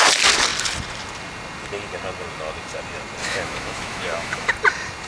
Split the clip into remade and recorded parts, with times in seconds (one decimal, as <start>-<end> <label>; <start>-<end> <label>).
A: 0.0-3.2 recorded; 3.2-4.5 remade; 4.5-5.1 recorded